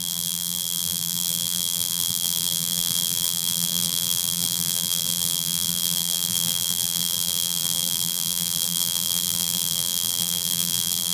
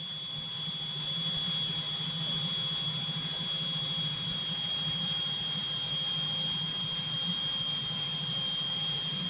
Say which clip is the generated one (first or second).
first